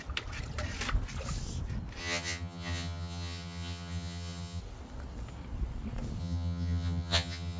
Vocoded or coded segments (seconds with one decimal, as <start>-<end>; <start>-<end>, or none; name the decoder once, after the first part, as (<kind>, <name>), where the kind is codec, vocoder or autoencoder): 2.0-4.6 (vocoder, HiFi-GAN); 6.2-7.6